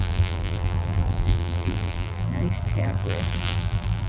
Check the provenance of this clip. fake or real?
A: fake